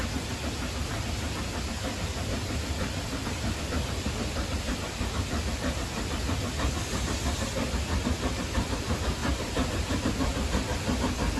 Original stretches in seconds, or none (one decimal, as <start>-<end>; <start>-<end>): 0.0-11.4